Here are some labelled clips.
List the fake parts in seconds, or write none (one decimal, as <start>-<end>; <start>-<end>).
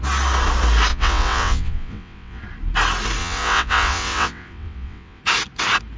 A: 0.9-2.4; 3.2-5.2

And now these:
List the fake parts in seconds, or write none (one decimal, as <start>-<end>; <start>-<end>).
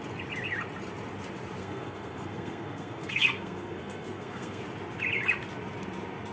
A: 1.6-4.6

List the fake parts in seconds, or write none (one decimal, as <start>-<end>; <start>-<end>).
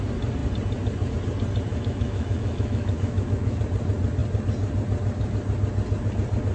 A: 1.7-3.6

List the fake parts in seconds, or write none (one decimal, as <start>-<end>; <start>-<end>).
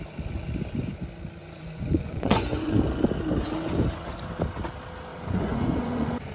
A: 1.4-2.8; 5.1-6.3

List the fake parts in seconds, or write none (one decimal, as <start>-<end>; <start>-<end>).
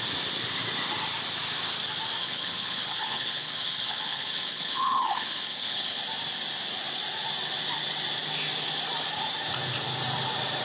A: 2.2-6.0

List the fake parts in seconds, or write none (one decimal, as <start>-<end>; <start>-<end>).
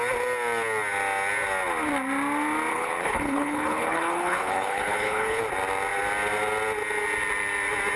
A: 2.7-5.4